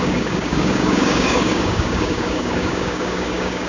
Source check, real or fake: fake